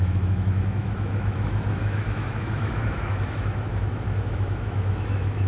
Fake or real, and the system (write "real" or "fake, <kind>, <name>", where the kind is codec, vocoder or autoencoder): fake, autoencoder, DAC-VAE